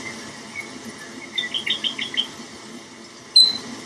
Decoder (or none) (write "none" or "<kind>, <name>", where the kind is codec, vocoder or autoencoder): none